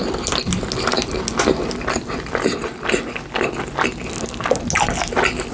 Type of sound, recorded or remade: recorded